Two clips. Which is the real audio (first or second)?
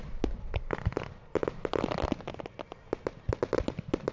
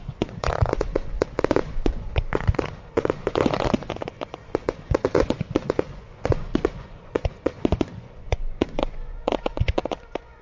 first